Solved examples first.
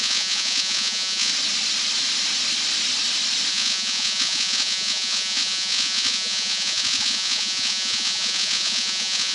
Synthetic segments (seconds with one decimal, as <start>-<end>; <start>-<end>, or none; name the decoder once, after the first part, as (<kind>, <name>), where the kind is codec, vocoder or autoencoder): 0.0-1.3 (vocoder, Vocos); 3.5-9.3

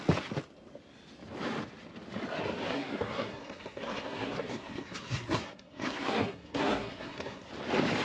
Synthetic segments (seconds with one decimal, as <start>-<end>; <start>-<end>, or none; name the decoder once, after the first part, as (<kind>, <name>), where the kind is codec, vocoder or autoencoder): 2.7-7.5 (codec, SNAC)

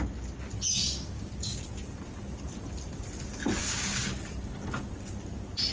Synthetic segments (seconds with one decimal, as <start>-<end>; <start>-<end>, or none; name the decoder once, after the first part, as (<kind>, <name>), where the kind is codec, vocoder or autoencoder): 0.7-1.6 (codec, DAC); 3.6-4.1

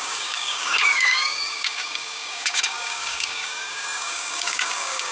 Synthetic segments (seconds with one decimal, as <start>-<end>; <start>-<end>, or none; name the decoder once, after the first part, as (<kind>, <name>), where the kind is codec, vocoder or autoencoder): 0.0-5.1 (codec, DAC)

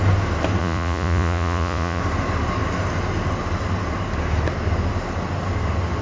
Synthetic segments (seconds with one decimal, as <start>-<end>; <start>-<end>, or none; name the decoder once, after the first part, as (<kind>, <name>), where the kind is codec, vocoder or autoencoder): 0.6-2.0 (vocoder, Vocos)

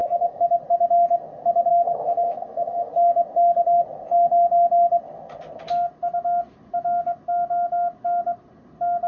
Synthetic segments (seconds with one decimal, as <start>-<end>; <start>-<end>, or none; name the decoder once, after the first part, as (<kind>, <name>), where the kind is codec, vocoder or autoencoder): 0.0-0.6 (autoencoder, DAC-VAE); 1.7-2.9